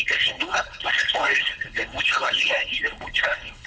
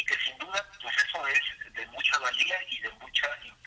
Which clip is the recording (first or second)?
second